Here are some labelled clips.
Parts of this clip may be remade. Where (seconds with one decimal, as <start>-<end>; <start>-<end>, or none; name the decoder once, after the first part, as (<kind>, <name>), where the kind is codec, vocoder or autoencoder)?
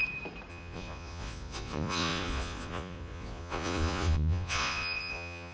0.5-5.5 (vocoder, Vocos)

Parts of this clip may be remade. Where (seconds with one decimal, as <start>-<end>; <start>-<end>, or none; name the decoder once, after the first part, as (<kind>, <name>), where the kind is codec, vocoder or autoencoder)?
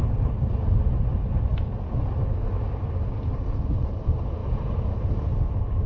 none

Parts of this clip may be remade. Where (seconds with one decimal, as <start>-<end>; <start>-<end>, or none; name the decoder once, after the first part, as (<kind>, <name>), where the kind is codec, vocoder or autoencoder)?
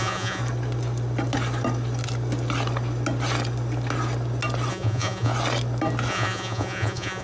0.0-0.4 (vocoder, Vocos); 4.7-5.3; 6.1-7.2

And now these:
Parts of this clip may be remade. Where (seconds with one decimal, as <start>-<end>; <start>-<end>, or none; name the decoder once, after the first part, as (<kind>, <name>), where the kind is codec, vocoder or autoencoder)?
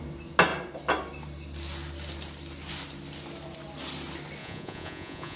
4.4-5.4 (vocoder, Vocos)